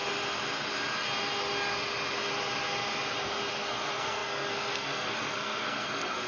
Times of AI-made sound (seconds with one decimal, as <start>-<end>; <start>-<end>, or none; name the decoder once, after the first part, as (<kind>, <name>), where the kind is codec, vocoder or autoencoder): 3.5-6.3 (codec, SNAC)